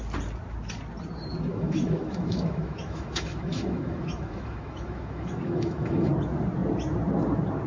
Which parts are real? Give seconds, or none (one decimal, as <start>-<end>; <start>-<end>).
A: 0.0-1.5; 6.1-7.7